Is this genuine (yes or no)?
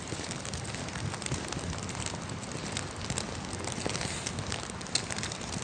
yes